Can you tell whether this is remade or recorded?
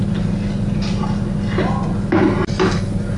recorded